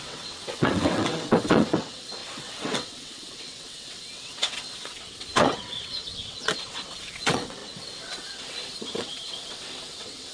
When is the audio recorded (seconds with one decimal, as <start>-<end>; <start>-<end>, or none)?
none